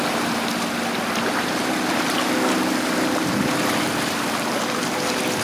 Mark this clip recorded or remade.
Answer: recorded